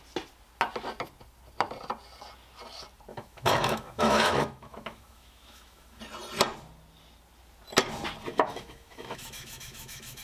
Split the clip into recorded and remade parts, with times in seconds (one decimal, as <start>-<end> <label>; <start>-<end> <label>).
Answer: 0.0-3.1 recorded; 3.1-6.0 remade; 6.0-8.3 recorded; 8.3-10.2 remade